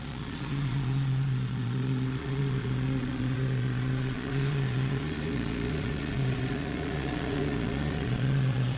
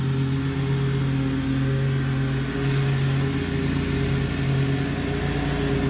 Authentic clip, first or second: second